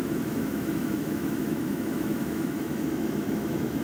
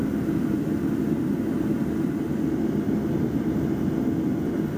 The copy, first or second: first